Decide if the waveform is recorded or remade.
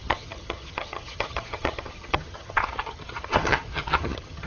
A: remade